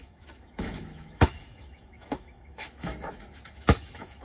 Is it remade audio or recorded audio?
remade